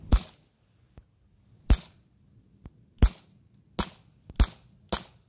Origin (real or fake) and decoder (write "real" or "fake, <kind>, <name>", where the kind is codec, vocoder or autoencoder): real